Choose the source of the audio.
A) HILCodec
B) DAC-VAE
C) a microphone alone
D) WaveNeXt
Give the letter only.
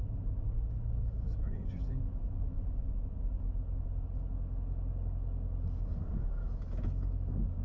C